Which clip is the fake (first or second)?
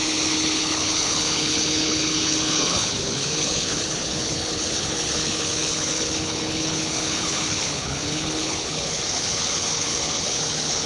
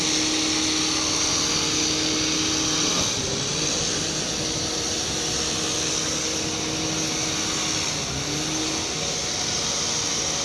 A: first